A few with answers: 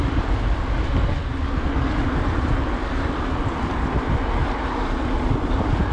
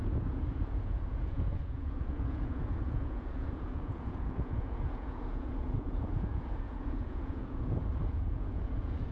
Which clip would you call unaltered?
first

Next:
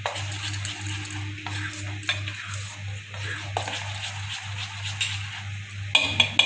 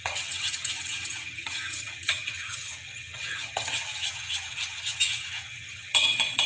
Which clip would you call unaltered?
first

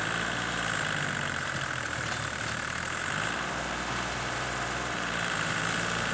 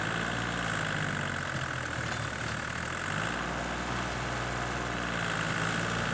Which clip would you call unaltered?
second